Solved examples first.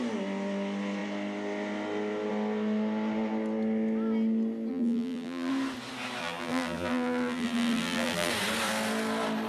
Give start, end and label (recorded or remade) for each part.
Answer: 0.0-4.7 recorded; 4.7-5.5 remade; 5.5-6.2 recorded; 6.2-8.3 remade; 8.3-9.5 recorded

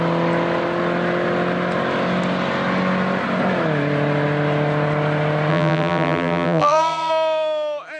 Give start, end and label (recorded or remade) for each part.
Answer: 0.0-5.5 recorded; 5.5-7.1 remade; 7.1-8.0 recorded